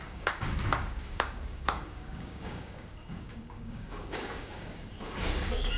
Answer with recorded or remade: remade